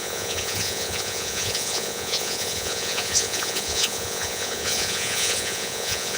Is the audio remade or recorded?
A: remade